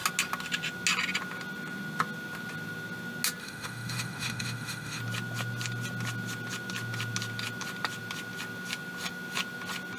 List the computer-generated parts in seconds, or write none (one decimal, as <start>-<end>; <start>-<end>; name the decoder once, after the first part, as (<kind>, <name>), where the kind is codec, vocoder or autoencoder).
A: 3.4-5.0 (autoencoder, DAC-VAE)